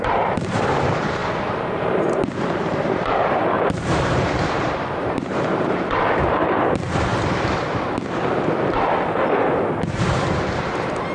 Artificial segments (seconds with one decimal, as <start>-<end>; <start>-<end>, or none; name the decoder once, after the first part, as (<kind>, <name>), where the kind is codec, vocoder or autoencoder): 0.0-7.1 (vocoder, BigVGAN v2); 9.9-11.1